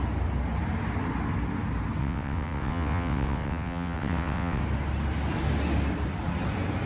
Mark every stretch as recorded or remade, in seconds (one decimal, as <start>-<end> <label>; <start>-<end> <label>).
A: 0.0-2.0 recorded; 2.0-4.6 remade; 4.6-6.9 recorded